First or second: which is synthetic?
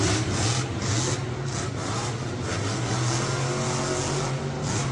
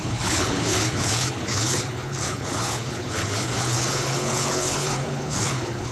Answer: second